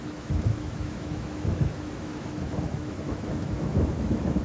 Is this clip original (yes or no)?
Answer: no